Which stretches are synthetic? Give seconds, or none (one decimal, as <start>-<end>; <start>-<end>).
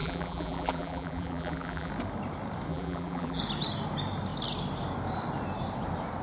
0.0-1.9; 2.7-3.4